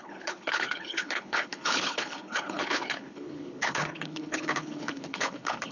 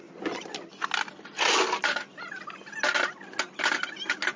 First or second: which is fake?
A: first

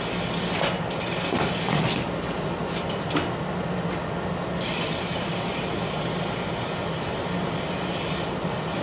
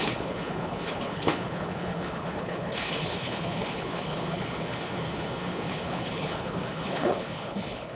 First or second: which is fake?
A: second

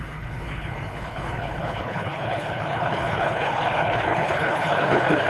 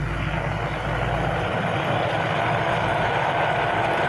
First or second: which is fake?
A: first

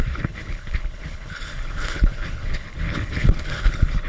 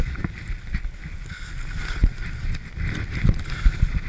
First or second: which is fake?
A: first